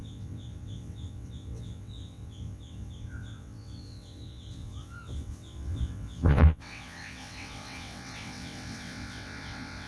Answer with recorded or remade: remade